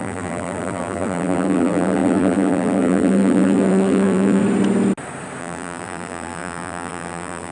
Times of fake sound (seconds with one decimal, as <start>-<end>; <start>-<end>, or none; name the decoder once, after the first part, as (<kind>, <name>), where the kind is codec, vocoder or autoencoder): 0.0-4.4 (vocoder, BigVGAN v2); 5.4-7.5